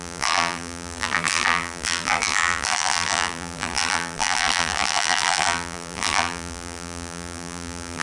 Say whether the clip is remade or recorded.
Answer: remade